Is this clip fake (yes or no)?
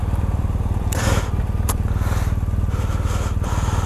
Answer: yes